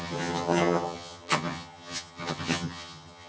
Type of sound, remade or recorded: remade